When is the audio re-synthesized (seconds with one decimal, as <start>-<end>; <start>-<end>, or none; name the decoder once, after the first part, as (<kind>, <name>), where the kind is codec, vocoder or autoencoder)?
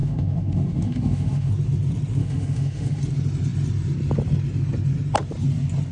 0.0-1.5 (autoencoder, DAC-VAE); 2.2-3.0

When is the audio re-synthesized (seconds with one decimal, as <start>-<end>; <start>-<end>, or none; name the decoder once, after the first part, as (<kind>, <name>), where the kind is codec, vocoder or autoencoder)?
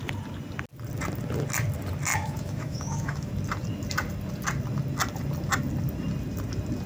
2.1-3.3 (autoencoder, DAC-VAE)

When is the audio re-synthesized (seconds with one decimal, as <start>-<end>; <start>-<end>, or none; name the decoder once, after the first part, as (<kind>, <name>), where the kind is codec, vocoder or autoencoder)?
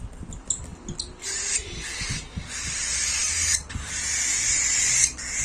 none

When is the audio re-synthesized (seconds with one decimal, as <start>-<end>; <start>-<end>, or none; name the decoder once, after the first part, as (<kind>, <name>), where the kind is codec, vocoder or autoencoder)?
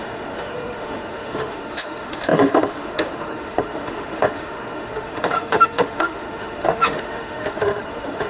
0.0-8.3 (autoencoder, DAC-VAE)